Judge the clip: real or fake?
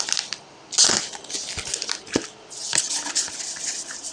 real